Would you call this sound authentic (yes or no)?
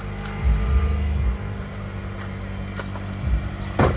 yes